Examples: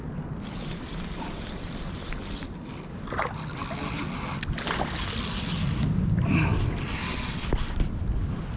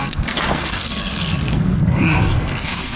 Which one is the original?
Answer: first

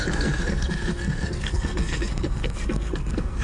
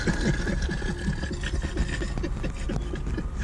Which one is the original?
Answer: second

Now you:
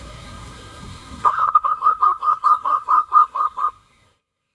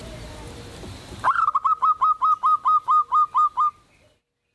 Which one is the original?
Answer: second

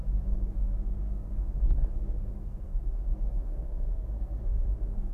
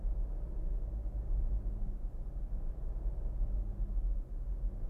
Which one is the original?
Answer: second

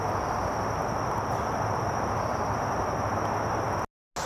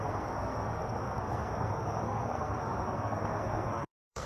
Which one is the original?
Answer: first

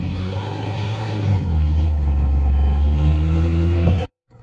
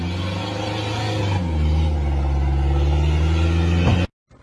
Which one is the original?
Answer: second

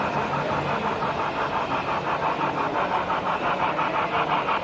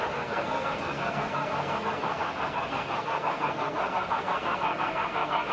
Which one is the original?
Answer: first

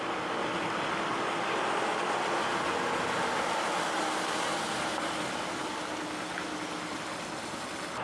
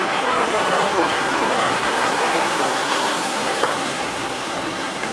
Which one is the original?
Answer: first